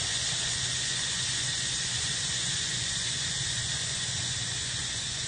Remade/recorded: remade